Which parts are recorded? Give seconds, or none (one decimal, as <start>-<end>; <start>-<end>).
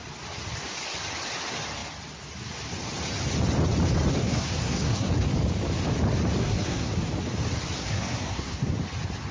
0.0-4.2; 5.1-6.4; 6.9-7.8; 8.7-9.3